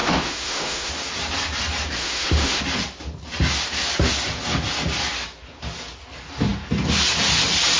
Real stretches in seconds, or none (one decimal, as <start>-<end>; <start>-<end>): 0.9-2.0; 2.6-7.8